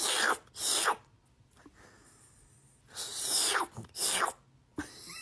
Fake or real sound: real